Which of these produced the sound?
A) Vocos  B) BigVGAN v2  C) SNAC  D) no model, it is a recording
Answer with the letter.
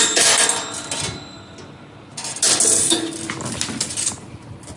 D